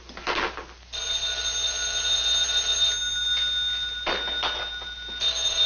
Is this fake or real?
real